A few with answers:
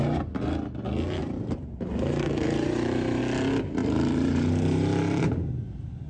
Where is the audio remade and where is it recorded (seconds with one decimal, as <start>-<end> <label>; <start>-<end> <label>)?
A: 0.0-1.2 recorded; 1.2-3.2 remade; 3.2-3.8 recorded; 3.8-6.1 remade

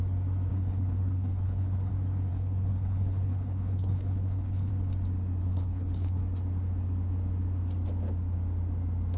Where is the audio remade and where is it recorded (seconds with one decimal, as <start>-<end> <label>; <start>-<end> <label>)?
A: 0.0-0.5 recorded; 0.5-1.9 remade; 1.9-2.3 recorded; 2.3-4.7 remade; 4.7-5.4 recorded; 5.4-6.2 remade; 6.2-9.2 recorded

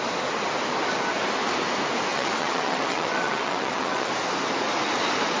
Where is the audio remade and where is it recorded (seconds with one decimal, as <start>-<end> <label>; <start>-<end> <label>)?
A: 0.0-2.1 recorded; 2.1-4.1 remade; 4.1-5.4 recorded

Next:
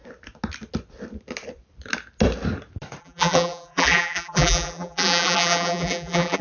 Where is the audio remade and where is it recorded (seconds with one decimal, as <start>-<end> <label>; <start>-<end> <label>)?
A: 0.0-3.0 recorded; 3.0-6.4 remade